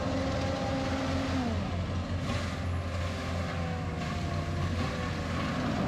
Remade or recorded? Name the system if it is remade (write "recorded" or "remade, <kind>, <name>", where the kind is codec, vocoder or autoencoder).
recorded